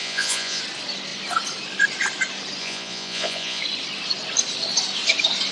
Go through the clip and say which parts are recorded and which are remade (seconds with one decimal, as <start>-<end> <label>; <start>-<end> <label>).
0.0-0.6 remade; 0.6-2.6 recorded; 2.6-3.6 remade; 3.6-5.5 recorded